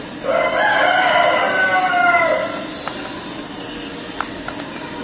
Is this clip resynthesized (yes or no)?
no